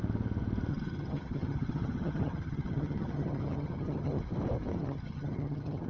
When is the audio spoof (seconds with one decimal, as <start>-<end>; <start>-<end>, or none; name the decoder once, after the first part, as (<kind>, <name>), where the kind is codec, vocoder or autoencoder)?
0.7-4.2 (vocoder, HiFi-GAN); 4.7-5.9

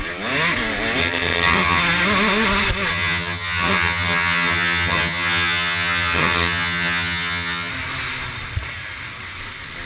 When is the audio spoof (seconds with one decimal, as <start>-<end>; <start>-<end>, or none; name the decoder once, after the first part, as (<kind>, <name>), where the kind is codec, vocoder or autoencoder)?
1.0-1.8 (vocoder, HiFi-GAN); 2.9-7.7

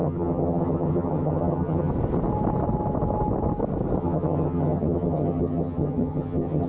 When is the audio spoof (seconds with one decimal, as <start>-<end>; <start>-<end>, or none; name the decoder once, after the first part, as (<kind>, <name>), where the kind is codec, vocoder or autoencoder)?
0.0-1.9 (vocoder, HiFi-GAN); 4.0-6.7

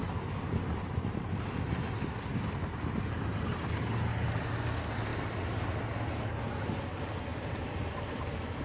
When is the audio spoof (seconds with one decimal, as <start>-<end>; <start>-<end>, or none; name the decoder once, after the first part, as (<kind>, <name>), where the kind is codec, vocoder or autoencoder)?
none

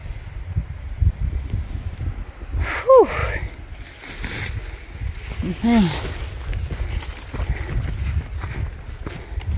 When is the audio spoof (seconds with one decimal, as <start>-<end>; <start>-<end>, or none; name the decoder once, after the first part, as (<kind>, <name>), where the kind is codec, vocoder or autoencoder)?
none

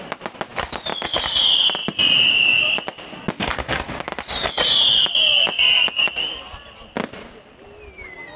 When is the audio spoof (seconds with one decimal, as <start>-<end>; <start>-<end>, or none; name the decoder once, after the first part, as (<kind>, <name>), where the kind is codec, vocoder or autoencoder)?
none

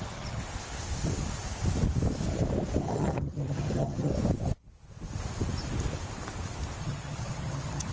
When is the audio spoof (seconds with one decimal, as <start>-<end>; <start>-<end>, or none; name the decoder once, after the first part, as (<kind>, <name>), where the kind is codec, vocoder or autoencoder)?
0.0-0.4 (vocoder, HiFi-GAN); 2.8-4.1; 6.8-7.9